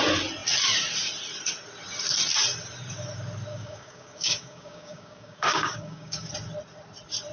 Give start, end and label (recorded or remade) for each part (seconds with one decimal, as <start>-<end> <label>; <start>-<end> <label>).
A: 0.0-3.5 recorded; 3.5-6.3 remade; 6.3-7.3 recorded